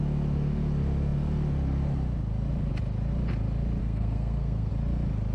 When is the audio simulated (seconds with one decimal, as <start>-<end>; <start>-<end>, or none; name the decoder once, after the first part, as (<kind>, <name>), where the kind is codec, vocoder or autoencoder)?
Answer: 3.8-4.7 (codec, SNAC)

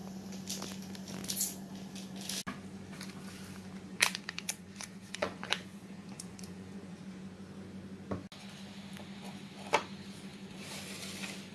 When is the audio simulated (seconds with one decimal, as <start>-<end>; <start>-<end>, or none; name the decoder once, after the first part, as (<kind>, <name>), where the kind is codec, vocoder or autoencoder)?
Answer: 3.9-7.0 (vocoder, Vocos)

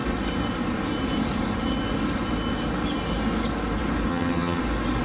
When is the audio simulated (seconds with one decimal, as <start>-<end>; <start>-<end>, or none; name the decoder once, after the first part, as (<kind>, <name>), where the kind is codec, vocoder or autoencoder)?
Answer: 4.1-4.6 (vocoder, HiFi-GAN)

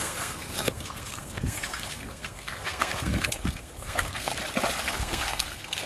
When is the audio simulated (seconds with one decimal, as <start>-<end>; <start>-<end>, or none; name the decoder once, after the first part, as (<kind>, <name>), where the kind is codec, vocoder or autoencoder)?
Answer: 0.0-4.3 (codec, SNAC); 4.8-5.9

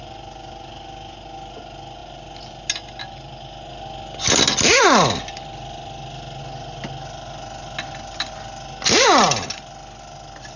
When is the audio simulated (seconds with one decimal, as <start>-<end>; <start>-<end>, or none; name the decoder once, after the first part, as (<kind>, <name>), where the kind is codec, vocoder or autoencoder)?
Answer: none